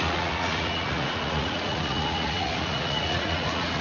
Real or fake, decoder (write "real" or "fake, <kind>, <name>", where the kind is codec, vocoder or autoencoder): fake, vocoder, Vocos